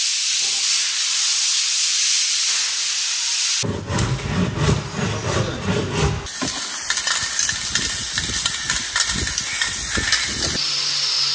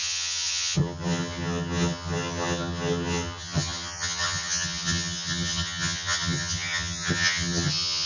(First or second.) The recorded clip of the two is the first